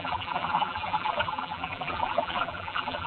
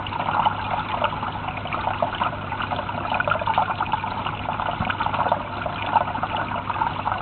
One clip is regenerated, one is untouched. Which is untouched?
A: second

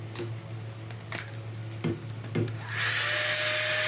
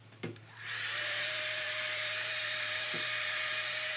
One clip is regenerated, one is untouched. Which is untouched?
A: first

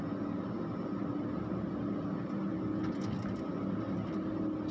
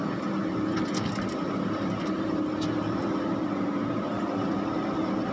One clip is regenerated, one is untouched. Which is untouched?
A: first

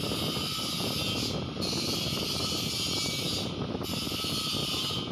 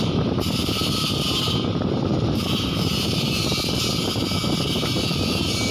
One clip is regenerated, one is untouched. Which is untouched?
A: first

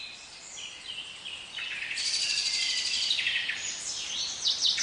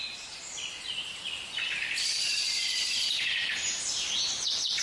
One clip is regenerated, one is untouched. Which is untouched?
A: first